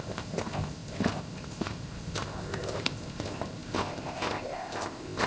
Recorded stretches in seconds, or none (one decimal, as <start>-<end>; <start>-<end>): none